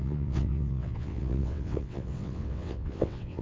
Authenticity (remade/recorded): remade